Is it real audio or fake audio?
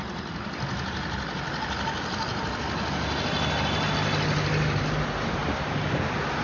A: real